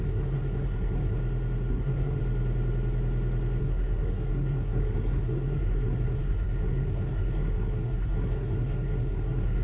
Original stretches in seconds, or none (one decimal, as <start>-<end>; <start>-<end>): 1.2-1.7; 2.2-3.6